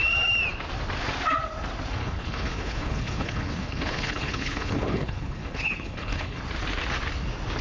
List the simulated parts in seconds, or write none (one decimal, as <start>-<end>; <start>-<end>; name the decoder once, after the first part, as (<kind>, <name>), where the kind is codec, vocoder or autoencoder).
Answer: 2.0-6.4 (codec, HILCodec)